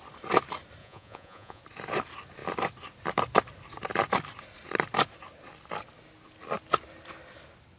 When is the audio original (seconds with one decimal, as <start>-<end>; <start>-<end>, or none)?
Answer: 0.0-0.8; 1.6-7.8